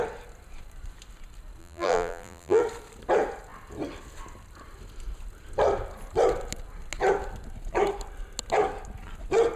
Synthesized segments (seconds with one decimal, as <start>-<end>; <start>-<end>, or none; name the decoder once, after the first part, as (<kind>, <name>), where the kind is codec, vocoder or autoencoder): 1.6-2.6 (vocoder, BigVGAN v2)